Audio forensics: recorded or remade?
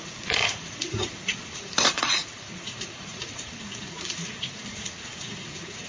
remade